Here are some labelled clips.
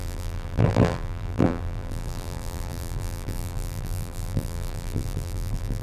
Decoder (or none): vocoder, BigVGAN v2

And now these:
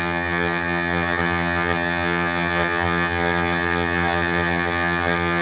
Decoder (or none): vocoder, HiFi-GAN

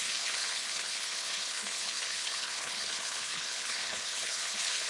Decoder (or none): codec, HILCodec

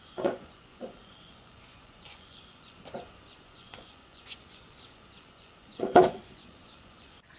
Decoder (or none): vocoder, Vocos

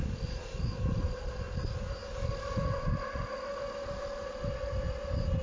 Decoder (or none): none